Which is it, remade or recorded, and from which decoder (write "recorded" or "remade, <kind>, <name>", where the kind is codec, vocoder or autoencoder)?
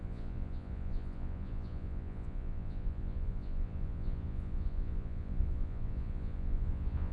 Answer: remade, vocoder, Vocos